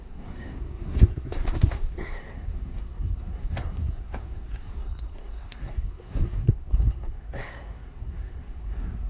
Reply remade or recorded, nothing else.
remade